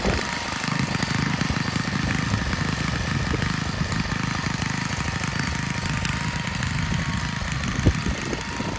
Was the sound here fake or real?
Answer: real